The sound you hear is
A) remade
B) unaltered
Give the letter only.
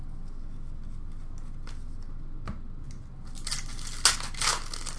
B